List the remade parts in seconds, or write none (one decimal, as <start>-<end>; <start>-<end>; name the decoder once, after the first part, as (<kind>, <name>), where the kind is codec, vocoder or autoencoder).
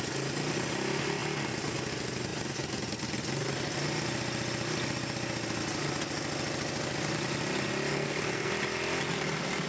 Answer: 7.9-8.5 (codec, SNAC)